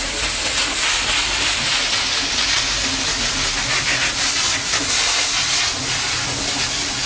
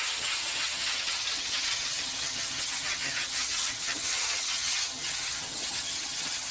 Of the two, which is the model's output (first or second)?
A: second